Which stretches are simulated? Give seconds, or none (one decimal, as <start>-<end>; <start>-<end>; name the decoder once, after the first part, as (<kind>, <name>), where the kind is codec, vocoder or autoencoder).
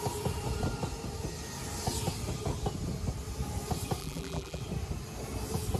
4.0-4.6 (vocoder, BigVGAN v2)